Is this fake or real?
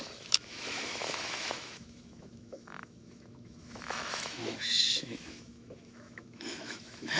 fake